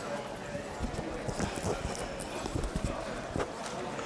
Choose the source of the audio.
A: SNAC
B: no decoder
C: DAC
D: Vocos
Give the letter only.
B